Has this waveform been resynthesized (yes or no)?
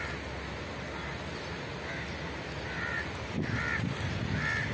no